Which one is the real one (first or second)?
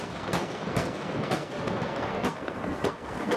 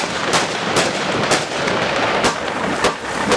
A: second